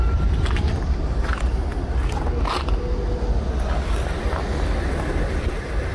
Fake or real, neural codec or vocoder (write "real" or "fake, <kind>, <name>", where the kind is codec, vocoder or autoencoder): real